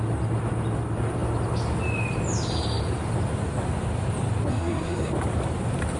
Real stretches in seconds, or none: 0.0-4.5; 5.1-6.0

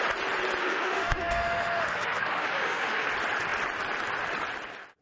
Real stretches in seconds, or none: 0.0-0.6; 3.1-5.0